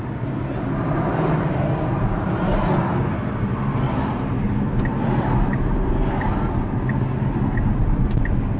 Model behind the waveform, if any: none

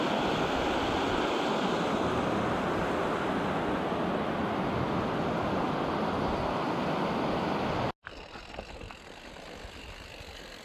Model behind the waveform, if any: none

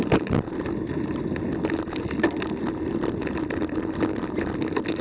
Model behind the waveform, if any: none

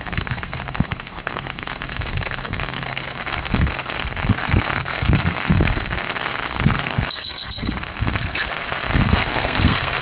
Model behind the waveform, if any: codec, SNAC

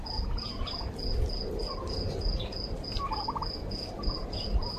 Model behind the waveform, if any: none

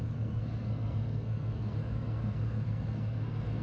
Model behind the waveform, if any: codec, SNAC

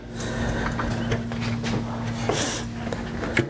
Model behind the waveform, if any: none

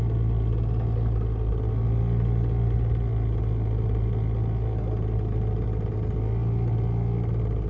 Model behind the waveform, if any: none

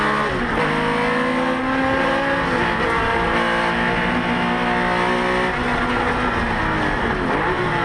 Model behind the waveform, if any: none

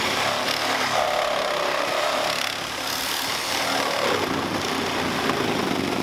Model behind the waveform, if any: none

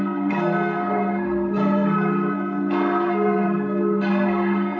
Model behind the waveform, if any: codec, SNAC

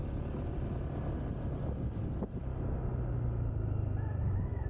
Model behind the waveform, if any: none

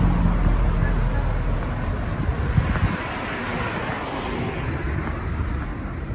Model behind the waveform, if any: none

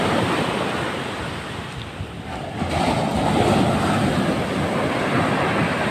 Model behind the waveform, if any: none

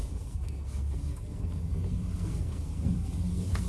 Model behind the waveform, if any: codec, SNAC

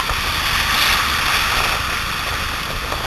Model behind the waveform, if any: none